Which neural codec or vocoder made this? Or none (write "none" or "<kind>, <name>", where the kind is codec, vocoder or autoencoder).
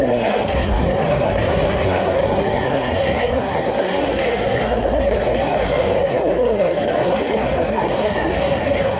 codec, SNAC